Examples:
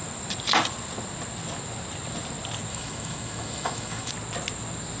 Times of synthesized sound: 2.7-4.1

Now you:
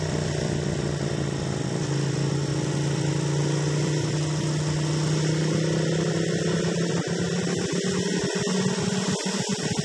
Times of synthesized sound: none

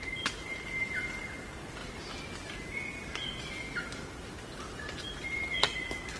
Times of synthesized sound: none

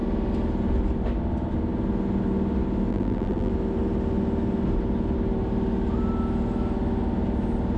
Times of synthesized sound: 2.9-3.5

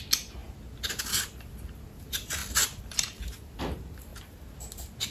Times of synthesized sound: 2.4-3.2

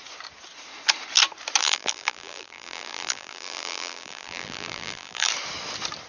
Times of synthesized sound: 1.6-5.3

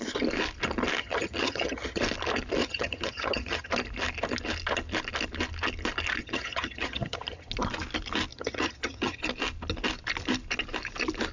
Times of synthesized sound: 1.0-2.0; 2.6-3.7; 6.2-7.5; 8.3-9.2